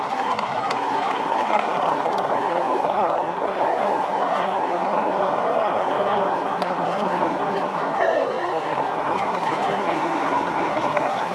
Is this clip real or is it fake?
fake